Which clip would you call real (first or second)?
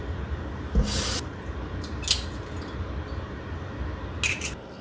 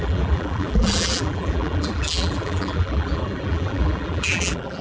first